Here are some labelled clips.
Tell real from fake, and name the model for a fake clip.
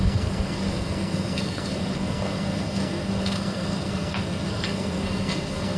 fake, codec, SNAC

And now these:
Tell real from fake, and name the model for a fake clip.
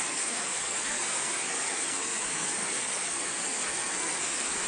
fake, codec, SNAC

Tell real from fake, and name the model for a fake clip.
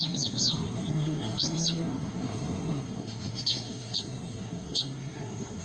fake, codec, SNAC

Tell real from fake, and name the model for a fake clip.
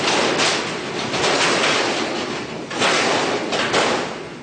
real